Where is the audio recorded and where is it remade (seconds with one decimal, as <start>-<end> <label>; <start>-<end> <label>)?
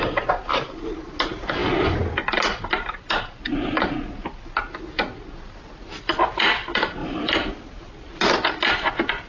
0.0-1.6 recorded; 1.6-2.6 remade; 2.6-7.0 recorded; 7.0-8.2 remade; 8.2-9.3 recorded